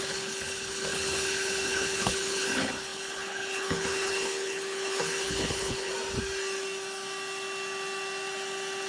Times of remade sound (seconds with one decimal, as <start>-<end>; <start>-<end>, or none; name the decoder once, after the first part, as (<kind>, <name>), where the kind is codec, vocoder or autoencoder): 0.0-5.9 (codec, HILCodec)